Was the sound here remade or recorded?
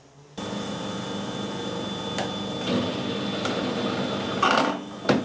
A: recorded